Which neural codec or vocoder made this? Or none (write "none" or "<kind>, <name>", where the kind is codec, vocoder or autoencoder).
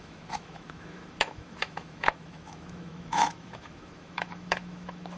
autoencoder, DAC-VAE